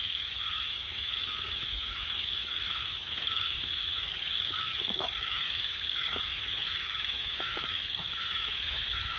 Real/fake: fake